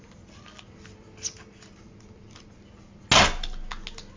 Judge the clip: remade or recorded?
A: recorded